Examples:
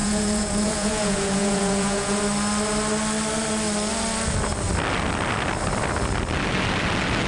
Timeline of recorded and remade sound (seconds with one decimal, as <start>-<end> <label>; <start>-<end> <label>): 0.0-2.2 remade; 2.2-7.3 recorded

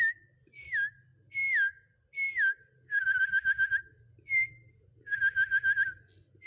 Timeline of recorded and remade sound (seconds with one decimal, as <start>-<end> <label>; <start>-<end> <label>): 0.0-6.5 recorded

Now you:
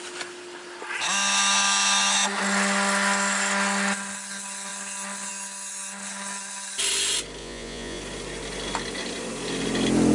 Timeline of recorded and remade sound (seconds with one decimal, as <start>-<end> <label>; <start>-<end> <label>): 0.0-7.4 recorded; 7.4-8.0 remade; 8.0-10.1 recorded

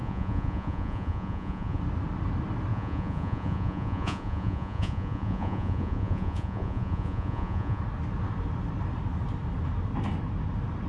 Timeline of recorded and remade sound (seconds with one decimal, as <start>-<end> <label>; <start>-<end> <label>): 0.0-1.8 remade; 1.8-2.7 recorded; 2.7-7.8 remade; 7.8-10.9 recorded

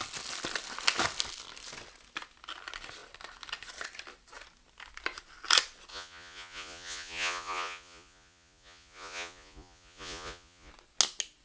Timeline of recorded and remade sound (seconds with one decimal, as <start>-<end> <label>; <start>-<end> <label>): 0.0-5.9 recorded; 5.9-10.7 remade; 10.7-11.4 recorded

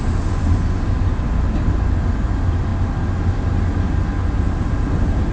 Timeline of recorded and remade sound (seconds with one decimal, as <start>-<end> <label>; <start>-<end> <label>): 0.0-5.3 recorded